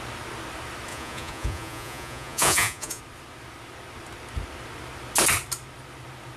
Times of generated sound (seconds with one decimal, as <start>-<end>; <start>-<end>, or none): 0.9-3.0